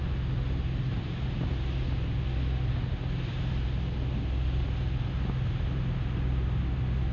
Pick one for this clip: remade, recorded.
recorded